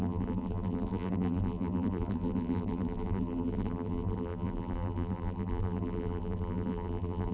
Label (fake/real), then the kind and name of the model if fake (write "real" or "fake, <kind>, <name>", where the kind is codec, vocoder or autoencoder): fake, vocoder, BigVGAN v2